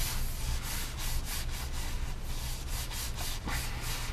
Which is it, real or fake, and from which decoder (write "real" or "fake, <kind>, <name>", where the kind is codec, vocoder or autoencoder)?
real